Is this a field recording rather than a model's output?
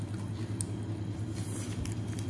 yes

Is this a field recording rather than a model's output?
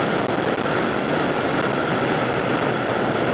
yes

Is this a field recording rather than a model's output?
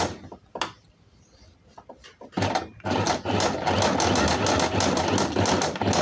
yes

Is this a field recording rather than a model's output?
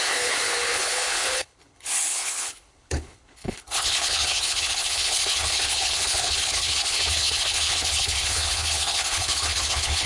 no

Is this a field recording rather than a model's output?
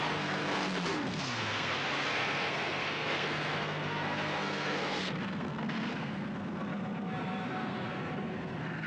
no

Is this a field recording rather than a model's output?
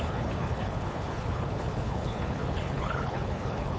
no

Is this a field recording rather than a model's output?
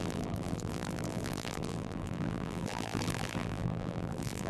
no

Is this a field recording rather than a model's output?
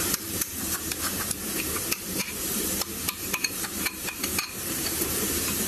no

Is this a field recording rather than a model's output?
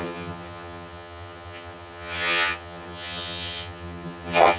no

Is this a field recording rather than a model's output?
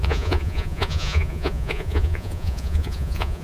no